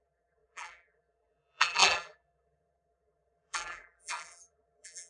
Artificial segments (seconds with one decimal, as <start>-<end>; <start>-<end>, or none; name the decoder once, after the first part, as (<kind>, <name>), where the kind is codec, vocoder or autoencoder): 0.0-5.1 (vocoder, BigVGAN v2)

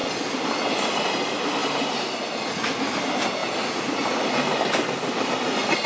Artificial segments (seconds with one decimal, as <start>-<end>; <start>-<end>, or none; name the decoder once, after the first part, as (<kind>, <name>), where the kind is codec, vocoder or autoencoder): none

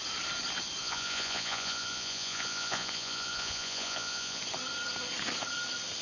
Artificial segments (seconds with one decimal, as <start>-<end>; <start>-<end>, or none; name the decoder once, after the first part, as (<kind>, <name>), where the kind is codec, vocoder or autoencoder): 0.8-4.4 (vocoder, Vocos)

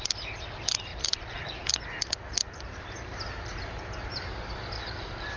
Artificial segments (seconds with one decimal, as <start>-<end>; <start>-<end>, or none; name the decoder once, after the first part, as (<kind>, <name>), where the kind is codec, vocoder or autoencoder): 0.9-4.1 (vocoder, BigVGAN v2)